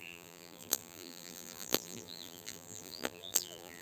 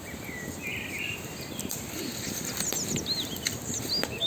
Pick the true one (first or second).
second